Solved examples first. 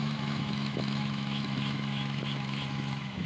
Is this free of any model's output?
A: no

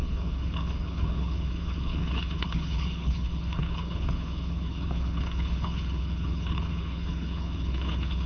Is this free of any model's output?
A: no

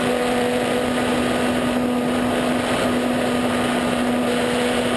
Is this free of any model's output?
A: yes